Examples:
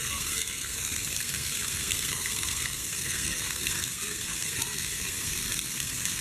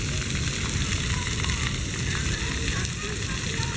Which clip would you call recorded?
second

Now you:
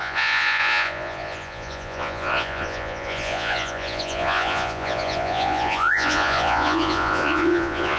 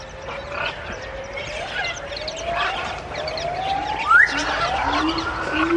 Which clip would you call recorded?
second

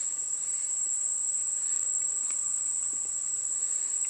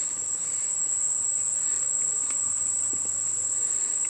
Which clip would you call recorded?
second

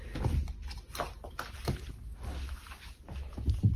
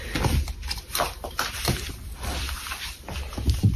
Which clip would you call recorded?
first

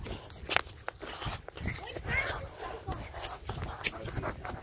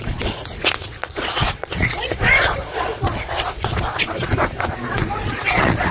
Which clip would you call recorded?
first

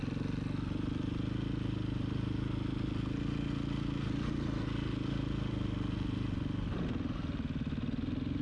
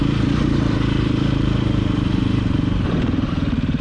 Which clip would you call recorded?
first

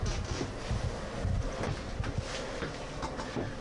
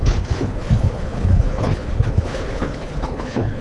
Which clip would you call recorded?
first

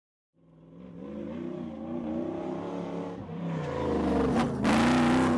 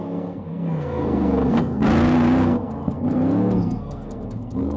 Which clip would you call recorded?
first